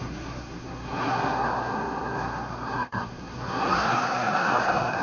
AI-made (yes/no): yes